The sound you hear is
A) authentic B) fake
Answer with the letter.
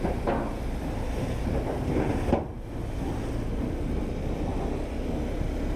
A